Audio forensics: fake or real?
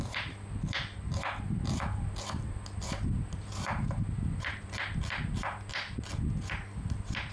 real